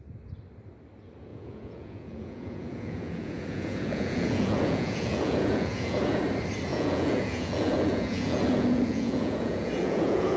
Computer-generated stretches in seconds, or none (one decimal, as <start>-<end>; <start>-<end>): 1.3-6.2; 6.7-10.4